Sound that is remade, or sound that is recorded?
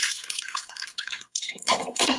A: remade